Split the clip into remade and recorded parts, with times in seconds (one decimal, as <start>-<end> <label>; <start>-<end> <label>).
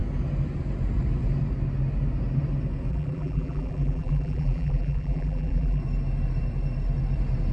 0.0-2.9 recorded; 2.9-5.8 remade; 5.8-7.5 recorded